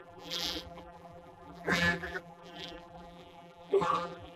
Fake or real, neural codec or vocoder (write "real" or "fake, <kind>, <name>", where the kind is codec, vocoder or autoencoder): fake, vocoder, BigVGAN v2